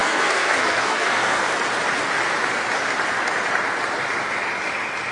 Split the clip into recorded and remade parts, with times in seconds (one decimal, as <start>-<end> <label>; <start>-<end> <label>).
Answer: 0.0-1.4 remade; 1.4-5.1 recorded